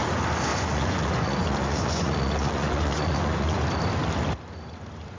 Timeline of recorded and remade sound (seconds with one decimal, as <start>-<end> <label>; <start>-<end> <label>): 0.0-0.5 recorded; 0.5-3.6 remade; 3.6-5.2 recorded